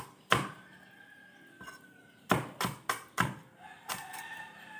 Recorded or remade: recorded